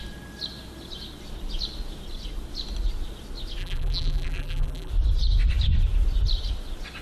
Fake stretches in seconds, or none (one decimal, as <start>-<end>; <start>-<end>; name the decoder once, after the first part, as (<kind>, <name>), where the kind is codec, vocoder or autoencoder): 3.6-4.9 (vocoder, BigVGAN v2)

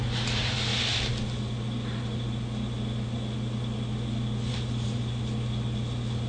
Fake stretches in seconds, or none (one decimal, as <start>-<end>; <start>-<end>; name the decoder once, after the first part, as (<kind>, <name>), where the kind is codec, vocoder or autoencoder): none

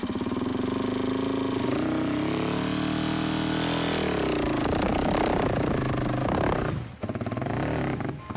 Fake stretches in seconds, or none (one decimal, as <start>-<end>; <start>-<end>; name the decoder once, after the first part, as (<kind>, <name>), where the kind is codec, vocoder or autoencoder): none

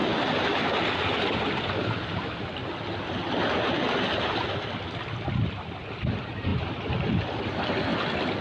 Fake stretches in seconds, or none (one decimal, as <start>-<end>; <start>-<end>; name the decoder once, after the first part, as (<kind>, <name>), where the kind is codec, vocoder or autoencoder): 0.9-2.6 (vocoder, BigVGAN v2); 6.0-6.5; 7.1-7.9

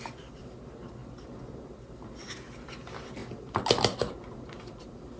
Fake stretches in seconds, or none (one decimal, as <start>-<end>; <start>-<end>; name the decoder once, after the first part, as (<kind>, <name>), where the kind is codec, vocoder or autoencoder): 0.0-3.2 (vocoder, BigVGAN v2); 3.8-5.2

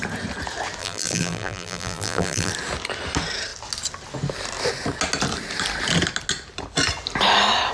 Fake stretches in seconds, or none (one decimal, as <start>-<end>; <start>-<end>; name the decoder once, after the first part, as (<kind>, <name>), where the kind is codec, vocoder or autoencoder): 0.8-2.5 (vocoder, BigVGAN v2)